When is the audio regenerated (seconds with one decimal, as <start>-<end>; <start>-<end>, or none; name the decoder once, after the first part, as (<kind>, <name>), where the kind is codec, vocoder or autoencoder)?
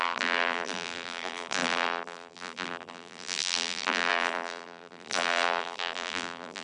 0.0-6.6 (vocoder, BigVGAN v2)